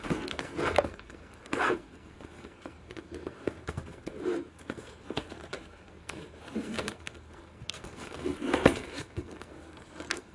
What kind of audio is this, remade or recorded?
remade